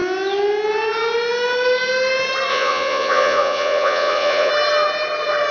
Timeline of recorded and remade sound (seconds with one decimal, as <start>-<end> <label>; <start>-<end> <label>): 0.0-2.5 recorded; 2.5-4.5 remade; 4.5-5.5 recorded